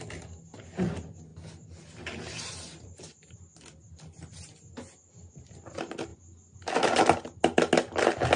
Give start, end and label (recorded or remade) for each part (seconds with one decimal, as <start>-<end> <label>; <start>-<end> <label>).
0.0-8.4 recorded